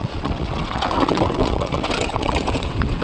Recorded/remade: remade